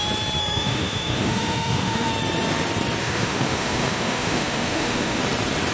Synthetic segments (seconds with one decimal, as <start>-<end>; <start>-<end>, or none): 0.4-2.1; 3.0-5.2